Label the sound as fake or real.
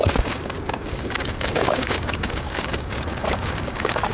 fake